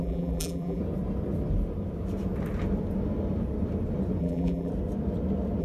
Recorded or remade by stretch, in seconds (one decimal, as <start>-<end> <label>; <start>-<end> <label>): 0.0-0.8 remade; 0.8-4.2 recorded; 4.2-4.7 remade; 4.7-5.6 recorded